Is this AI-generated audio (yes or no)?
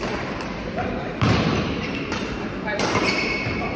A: yes